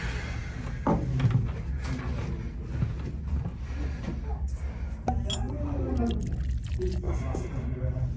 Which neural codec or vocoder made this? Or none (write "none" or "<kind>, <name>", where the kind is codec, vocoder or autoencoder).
none